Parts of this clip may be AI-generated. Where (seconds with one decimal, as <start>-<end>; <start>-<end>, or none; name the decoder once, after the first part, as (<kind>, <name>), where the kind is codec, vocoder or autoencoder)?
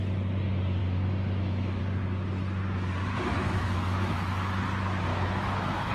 0.8-1.8 (autoencoder, DAC-VAE); 3.4-4.6; 5.1-5.9